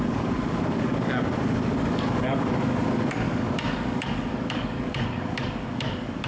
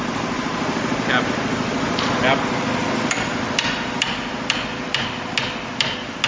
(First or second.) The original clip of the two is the second